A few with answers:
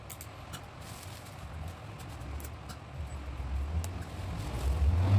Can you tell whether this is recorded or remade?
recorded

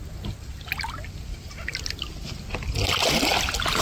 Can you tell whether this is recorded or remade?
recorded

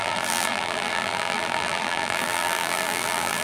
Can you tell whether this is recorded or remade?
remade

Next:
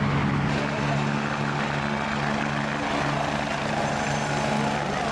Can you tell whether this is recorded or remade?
recorded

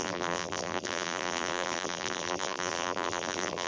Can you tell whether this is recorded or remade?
remade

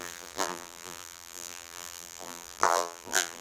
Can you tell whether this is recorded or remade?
remade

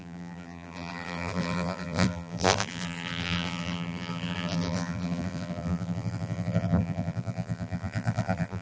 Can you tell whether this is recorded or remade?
remade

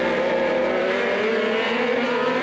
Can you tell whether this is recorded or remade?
remade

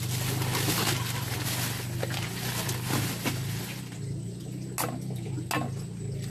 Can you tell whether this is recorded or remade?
recorded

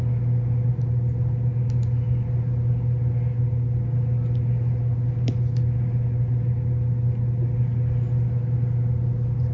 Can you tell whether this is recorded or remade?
recorded